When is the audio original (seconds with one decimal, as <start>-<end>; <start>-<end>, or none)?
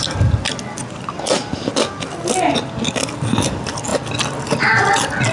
0.0-5.3